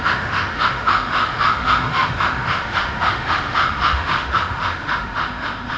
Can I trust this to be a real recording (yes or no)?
no